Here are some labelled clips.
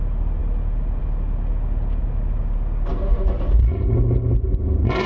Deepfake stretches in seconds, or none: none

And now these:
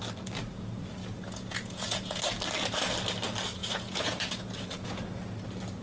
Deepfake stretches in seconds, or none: 1.0-2.2 (vocoder, Vocos); 3.6-4.9

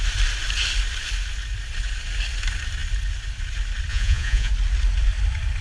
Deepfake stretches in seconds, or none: 3.9-4.5 (vocoder, Vocos)

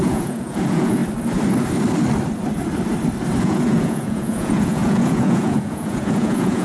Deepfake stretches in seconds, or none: 0.0-1.0 (vocoder, Vocos); 3.4-6.6

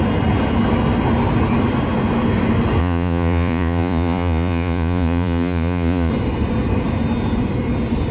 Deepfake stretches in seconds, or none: 2.8-6.1 (vocoder, Vocos)

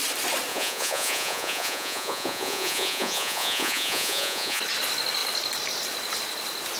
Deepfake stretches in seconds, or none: 0.5-4.6 (vocoder, Vocos)